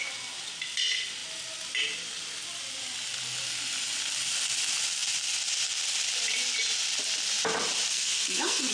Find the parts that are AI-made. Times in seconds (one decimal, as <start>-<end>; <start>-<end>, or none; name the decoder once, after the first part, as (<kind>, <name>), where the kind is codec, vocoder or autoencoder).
7.9-8.7 (codec, SNAC)